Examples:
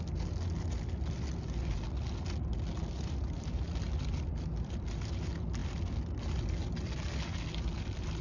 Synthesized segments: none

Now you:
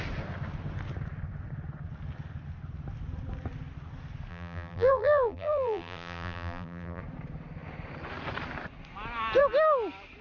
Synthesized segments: 4.3-7.0 (vocoder, BigVGAN v2)

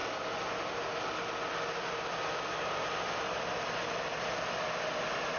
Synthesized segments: none

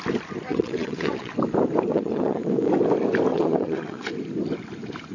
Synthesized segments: 0.5-1.3 (vocoder, WaveNeXt); 1.9-2.6; 3.3-4.1

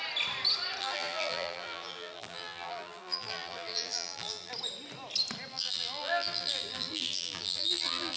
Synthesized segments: 0.8-4.5 (vocoder, BigVGAN v2); 5.5-8.2